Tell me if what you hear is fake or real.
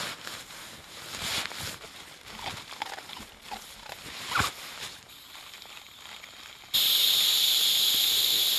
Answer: real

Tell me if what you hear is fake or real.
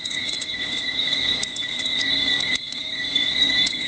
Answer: fake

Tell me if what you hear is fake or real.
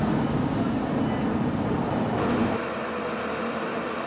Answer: real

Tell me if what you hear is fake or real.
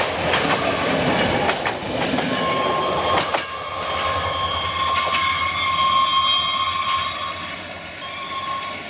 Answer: real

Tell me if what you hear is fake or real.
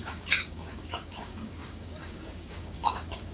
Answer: fake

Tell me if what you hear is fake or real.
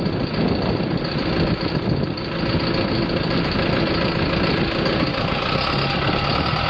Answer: real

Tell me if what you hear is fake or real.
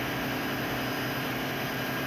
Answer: real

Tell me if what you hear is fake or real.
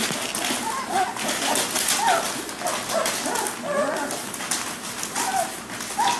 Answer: real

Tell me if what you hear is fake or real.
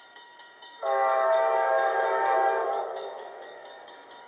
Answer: fake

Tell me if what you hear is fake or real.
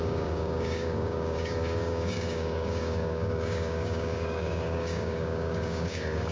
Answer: fake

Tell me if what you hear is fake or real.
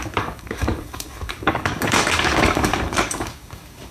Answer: fake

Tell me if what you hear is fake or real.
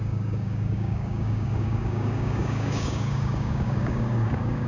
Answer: fake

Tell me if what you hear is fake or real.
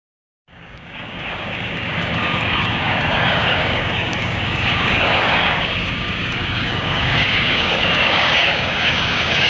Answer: fake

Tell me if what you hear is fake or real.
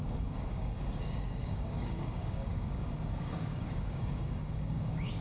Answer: fake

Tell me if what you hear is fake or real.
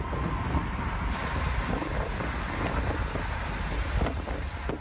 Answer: real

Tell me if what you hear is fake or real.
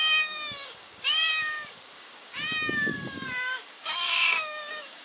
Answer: fake